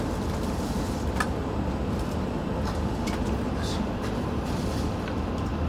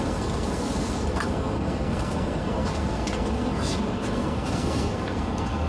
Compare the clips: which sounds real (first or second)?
first